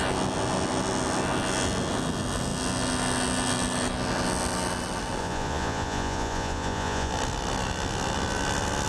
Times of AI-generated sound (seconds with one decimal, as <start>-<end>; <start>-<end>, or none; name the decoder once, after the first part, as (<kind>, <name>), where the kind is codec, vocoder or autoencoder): 5.2-7.1 (vocoder, Vocos)